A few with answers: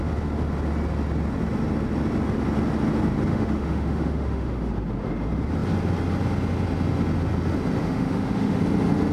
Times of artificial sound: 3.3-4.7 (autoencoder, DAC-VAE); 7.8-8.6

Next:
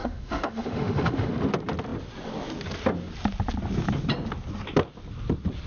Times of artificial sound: 0.0-1.3 (autoencoder, DAC-VAE)

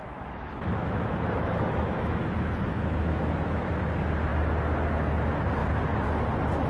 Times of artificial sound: 0.0-3.7 (autoencoder, DAC-VAE)

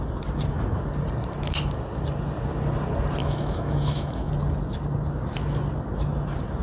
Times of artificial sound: 3.2-4.3 (autoencoder, DAC-VAE)

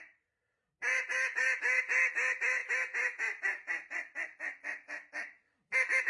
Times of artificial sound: none

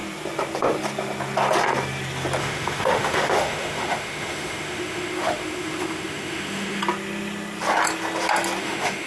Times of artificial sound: 2.4-6.8 (autoencoder, DAC-VAE); 8.6-9.1

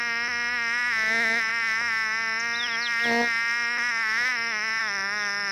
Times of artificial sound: none

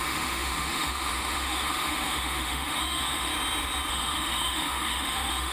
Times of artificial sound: 0.0-3.3 (autoencoder, DAC-VAE); 3.9-5.5